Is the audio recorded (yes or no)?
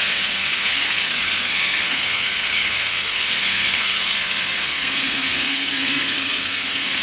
no